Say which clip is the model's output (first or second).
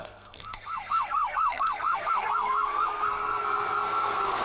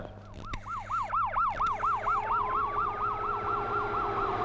first